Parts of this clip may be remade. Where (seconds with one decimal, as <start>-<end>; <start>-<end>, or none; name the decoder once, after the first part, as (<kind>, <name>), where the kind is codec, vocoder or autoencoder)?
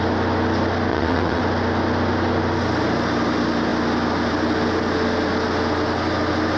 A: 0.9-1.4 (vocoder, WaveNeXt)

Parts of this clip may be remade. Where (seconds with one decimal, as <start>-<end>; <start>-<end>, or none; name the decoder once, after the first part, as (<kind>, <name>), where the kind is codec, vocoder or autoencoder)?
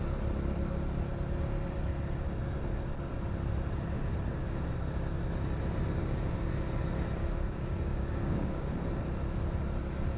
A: 6.0-6.5 (codec, DAC); 7.2-8.7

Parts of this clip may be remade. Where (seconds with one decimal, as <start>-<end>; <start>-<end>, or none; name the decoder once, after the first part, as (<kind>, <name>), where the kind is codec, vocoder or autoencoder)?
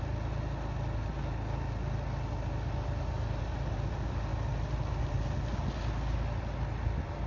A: none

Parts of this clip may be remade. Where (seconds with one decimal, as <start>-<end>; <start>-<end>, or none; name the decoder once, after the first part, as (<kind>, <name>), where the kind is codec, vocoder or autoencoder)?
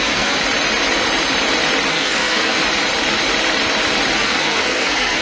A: 0.0-0.4 (codec, SNAC); 1.9-2.6; 4.2-5.2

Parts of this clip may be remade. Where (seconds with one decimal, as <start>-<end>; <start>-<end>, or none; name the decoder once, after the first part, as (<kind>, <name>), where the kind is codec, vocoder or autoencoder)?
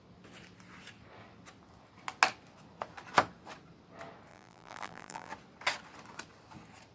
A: 4.3-5.3 (vocoder, BigVGAN v2)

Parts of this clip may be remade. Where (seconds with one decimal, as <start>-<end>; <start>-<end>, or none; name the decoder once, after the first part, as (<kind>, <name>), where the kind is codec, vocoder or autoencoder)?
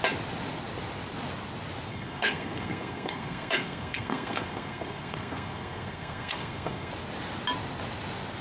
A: 1.9-6.9 (codec, SNAC)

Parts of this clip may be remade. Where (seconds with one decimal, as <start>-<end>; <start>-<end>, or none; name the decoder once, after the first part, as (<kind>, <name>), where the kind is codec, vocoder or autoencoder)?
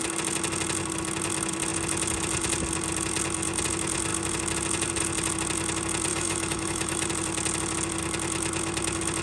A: 6.1-7.1 (autoencoder, DAC-VAE)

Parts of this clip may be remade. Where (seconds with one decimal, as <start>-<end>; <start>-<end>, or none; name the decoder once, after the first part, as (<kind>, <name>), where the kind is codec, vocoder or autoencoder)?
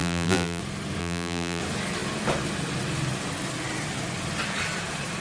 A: 0.0-0.6 (vocoder, BigVGAN v2); 1.0-1.6